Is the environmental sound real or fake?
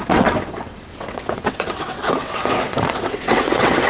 fake